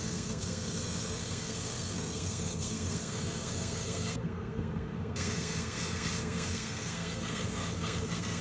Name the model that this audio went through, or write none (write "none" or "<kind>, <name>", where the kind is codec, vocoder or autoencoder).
codec, SNAC